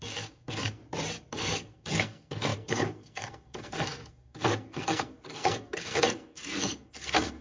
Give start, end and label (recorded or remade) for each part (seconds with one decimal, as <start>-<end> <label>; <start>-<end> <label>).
0.0-0.8 remade; 0.8-1.3 recorded; 1.3-7.4 remade